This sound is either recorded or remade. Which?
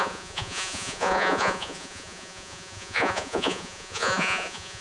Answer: remade